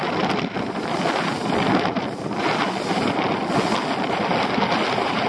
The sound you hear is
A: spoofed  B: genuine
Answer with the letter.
B